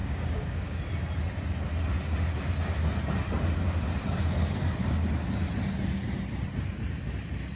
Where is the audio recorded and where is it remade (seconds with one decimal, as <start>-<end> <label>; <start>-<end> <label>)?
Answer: 0.0-0.8 remade; 0.8-7.6 recorded